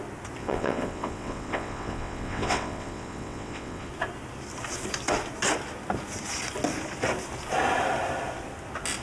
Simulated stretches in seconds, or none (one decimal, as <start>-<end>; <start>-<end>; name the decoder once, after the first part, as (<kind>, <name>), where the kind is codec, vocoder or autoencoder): 0.4-3.9 (vocoder, WaveNeXt)